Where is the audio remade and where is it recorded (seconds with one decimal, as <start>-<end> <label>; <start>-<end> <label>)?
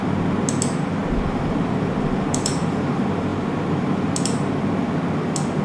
0.0-1.0 recorded; 1.0-2.7 remade; 2.7-5.6 recorded